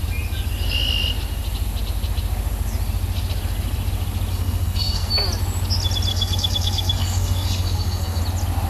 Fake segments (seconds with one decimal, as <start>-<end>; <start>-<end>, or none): 4.3-5.1; 6.1-8.2